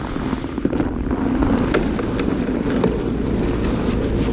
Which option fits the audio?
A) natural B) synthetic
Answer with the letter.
A